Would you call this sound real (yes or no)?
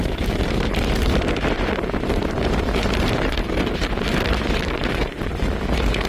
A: no